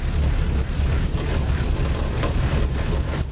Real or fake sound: real